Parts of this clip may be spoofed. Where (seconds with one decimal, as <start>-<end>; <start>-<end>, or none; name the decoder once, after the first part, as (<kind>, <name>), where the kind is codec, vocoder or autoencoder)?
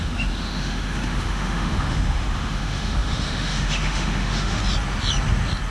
0.0-4.6 (autoencoder, DAC-VAE)